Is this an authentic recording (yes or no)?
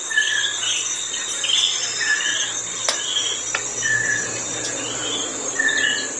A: yes